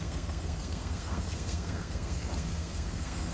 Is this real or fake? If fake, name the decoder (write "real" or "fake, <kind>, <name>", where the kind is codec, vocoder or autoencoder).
fake, codec, SNAC